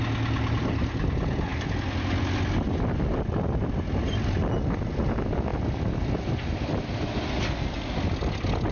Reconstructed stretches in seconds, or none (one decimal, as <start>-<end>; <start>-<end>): none